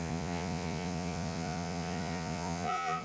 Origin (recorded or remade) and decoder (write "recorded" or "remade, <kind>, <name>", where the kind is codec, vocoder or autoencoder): remade, vocoder, Vocos